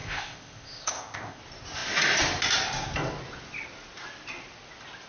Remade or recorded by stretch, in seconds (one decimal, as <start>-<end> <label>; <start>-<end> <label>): 0.0-1.4 remade; 1.4-5.1 recorded

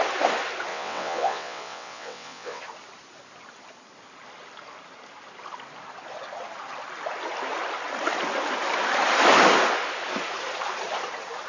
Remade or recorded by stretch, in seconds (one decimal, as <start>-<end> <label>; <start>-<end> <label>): 0.0-0.7 recorded; 0.7-2.6 remade; 2.6-11.5 recorded

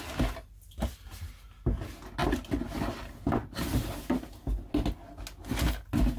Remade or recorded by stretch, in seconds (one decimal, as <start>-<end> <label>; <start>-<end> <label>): 0.0-6.2 recorded

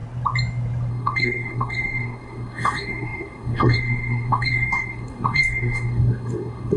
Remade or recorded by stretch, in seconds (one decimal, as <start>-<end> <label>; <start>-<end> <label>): 0.0-0.9 recorded; 0.9-6.8 remade

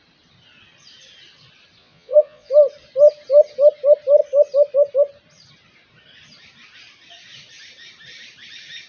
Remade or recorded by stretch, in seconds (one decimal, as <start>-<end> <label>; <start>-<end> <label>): 0.0-1.8 recorded; 1.8-2.5 remade; 2.5-8.9 recorded

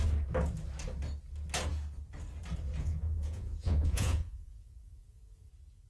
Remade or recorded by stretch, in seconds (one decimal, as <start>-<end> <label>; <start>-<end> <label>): 0.0-2.8 recorded; 2.8-5.5 remade; 5.5-5.9 recorded